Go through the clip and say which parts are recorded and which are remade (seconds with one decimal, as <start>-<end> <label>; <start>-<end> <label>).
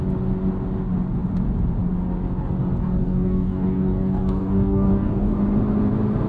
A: 0.0-2.8 recorded; 2.8-5.3 remade; 5.3-6.3 recorded